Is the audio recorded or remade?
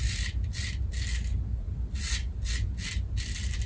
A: recorded